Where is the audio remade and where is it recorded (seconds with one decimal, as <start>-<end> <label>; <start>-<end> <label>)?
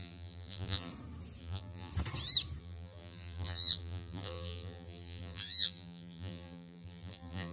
0.0-0.9 remade; 0.9-1.4 recorded; 1.4-1.9 remade; 1.9-2.6 recorded; 2.6-7.5 remade